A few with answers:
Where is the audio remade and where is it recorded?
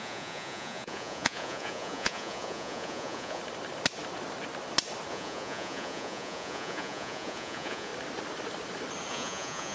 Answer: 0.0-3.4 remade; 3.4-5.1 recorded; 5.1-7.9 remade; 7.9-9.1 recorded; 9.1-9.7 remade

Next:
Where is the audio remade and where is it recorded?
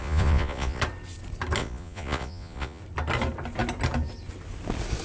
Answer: 0.0-0.8 remade; 0.8-1.6 recorded; 1.6-2.8 remade; 2.8-5.0 recorded